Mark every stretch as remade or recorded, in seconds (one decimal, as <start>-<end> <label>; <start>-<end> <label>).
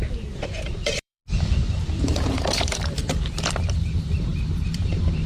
0.0-1.2 remade; 1.2-2.0 recorded; 2.0-3.0 remade; 3.0-3.6 recorded; 3.6-5.3 remade